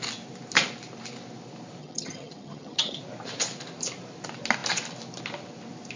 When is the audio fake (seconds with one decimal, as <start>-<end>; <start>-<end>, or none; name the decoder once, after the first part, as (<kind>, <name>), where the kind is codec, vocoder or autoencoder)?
1.8-3.0 (vocoder, HiFi-GAN)